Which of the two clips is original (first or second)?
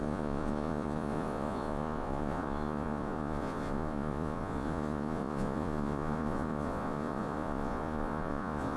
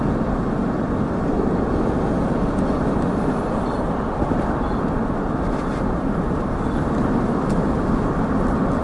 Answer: second